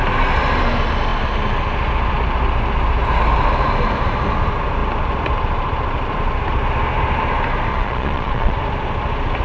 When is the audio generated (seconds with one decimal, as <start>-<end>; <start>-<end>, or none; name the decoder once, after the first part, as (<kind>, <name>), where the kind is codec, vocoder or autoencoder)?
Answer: 7.7-8.6 (vocoder, Vocos)